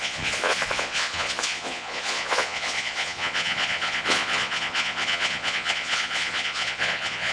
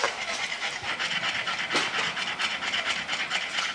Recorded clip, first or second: second